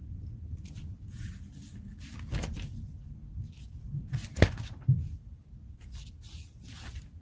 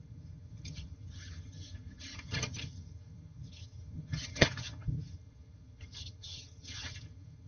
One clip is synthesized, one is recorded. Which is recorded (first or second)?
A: first